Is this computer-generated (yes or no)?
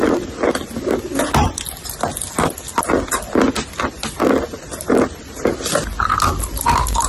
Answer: no